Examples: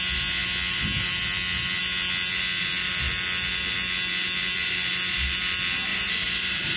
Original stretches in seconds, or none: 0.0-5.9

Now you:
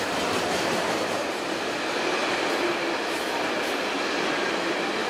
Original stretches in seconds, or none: 0.0-2.2; 2.7-5.1

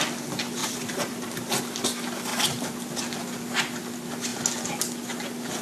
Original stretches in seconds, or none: 0.0-0.6; 1.6-5.6

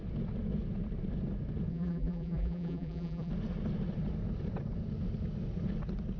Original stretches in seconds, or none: 0.0-1.7; 3.3-6.2

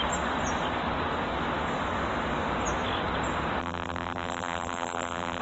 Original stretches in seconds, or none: 0.0-3.6